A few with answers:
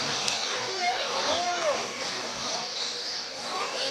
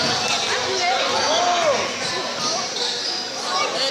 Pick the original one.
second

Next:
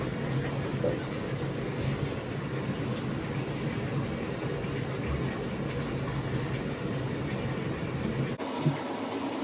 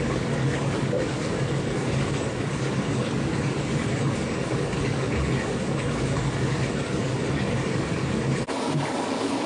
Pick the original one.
first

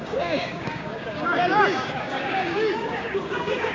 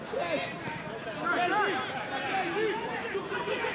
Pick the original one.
second